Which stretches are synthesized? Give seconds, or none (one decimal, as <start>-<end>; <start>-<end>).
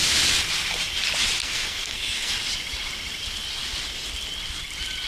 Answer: 1.4-2.3